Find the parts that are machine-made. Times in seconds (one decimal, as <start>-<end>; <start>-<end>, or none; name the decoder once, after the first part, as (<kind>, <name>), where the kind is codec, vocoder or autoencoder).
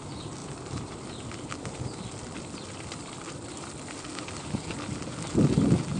0.4-3.5 (vocoder, BigVGAN v2); 4.1-4.7